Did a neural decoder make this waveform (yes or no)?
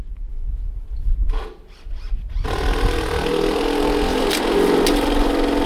no